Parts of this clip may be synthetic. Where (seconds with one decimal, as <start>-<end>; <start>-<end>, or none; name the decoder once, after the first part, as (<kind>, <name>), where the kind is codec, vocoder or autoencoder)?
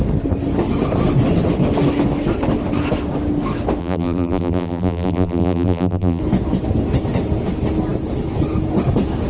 3.8-6.2 (vocoder, BigVGAN v2)